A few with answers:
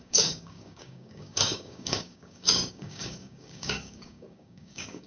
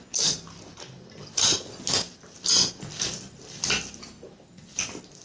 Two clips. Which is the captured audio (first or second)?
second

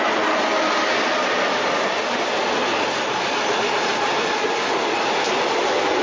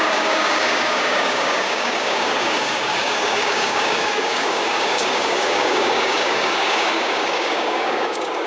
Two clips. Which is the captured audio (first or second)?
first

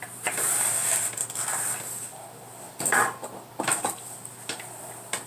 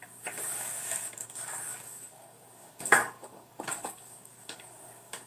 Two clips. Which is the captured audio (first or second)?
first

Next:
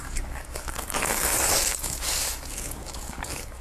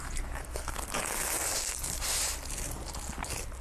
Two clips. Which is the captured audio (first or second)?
second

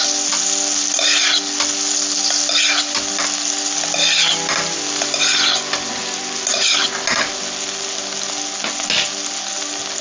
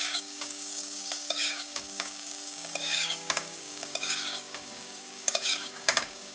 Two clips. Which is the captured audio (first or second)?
first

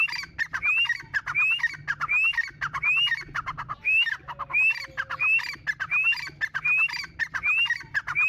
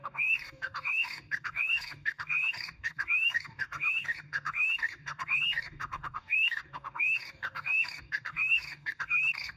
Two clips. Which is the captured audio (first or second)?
first